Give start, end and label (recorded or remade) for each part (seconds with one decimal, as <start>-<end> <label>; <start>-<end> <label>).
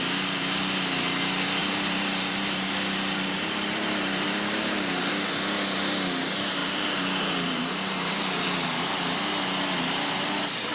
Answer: 0.0-1.6 recorded; 1.6-5.1 remade; 5.1-6.6 recorded; 6.6-8.9 remade; 8.9-10.7 recorded